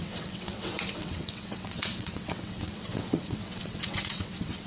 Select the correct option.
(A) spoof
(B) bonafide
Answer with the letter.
A